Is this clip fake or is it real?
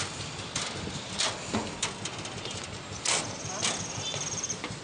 real